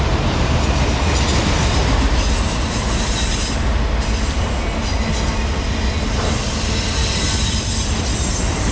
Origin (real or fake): real